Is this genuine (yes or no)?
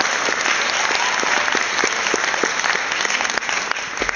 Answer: yes